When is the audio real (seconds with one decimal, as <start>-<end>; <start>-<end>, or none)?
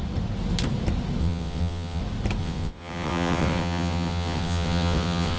0.0-1.2; 2.0-2.4